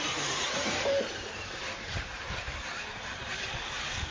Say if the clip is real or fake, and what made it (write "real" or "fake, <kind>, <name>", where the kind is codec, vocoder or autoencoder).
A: fake, vocoder, BigVGAN v2